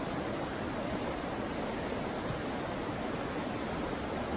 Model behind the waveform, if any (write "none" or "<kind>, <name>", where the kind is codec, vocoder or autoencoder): none